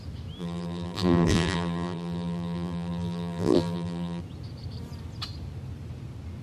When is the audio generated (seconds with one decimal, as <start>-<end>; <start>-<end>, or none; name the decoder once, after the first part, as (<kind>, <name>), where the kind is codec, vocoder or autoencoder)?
0.4-4.2 (vocoder, BigVGAN v2)